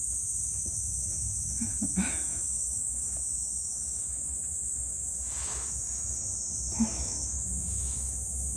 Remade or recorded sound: remade